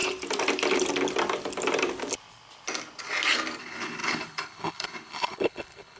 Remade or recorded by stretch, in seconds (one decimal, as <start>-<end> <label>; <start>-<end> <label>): 0.0-3.6 recorded; 3.6-6.0 remade